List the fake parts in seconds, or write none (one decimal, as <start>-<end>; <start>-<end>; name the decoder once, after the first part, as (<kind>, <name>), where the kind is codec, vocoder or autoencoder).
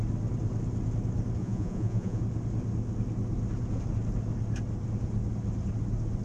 1.4-2.2 (vocoder, Vocos)